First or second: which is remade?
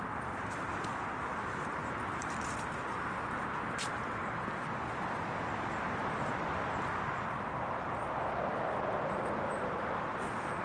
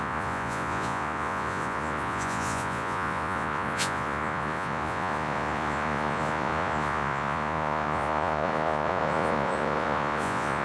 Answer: second